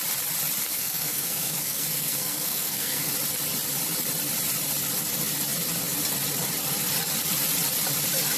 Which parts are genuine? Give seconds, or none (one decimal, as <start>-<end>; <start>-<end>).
0.0-0.7; 3.1-8.4